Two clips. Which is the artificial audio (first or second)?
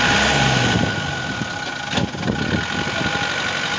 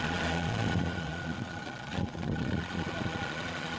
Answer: second